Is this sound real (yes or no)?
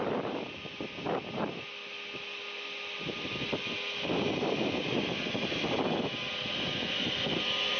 yes